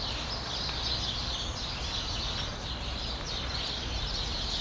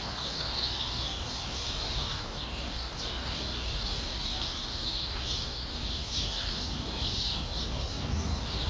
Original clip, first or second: first